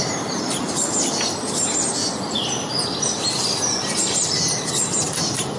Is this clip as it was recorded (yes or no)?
no